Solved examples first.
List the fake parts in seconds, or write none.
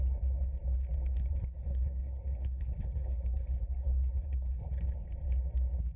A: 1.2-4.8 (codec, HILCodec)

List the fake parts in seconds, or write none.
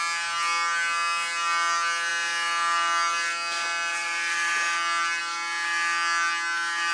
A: none